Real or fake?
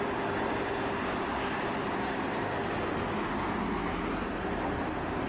real